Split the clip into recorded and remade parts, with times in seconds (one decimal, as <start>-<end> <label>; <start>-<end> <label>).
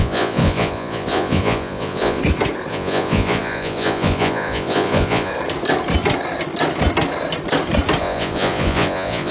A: 0.0-2.2 remade; 2.2-2.7 recorded; 2.7-5.3 remade; 5.3-8.0 recorded; 8.0-9.3 remade